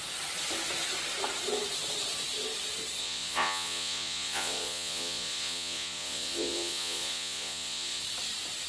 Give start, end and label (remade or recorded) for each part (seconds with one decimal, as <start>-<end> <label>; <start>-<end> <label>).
0.0-3.0 recorded; 3.0-8.0 remade; 8.0-8.7 recorded